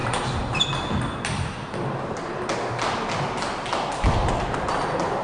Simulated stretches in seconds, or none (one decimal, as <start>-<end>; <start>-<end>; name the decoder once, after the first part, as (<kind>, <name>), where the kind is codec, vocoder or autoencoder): 0.0-0.6 (vocoder, BigVGAN v2); 4.2-4.7